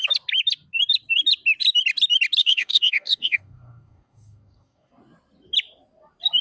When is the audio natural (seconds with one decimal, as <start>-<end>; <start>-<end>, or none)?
0.0-2.4; 4.9-6.4